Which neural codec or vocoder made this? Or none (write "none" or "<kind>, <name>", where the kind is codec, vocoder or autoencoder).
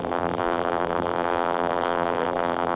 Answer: vocoder, BigVGAN v2